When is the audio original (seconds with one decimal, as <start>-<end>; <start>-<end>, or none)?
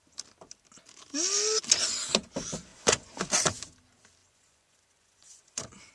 0.0-2.7; 3.2-4.2